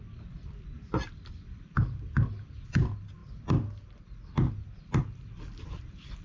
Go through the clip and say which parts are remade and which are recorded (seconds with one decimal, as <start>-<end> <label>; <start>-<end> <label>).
0.0-6.2 recorded